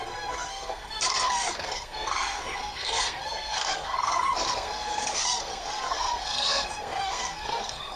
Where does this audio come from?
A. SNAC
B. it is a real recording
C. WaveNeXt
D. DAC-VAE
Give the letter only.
A